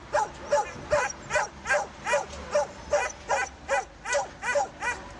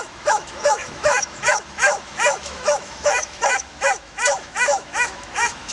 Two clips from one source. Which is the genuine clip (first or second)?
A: first